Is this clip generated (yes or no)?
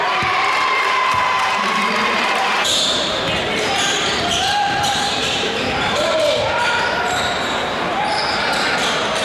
yes